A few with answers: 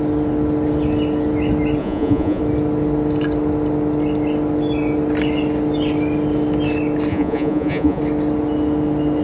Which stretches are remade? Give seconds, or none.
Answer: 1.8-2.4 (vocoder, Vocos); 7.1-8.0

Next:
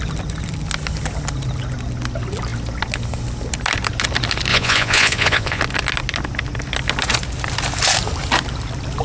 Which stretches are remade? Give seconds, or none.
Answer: 4.5-5.6 (vocoder, Vocos)

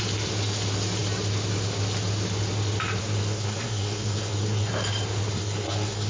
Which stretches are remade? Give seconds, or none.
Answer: 3.0-4.7 (codec, SNAC); 5.3-6.1

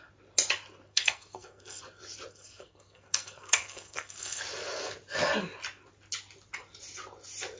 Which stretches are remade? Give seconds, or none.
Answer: 0.9-1.8 (codec, SNAC); 2.3-4.4